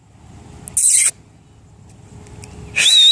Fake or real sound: real